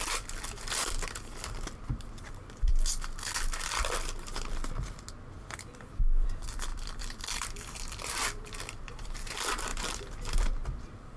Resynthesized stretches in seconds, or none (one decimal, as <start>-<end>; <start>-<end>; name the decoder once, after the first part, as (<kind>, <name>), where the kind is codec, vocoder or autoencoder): 0.0-2.7 (vocoder, BigVGAN v2); 5.3-11.2